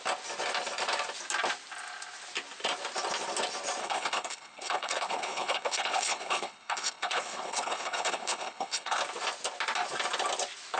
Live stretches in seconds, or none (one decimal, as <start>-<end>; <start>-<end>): 0.0-3.8; 9.0-10.8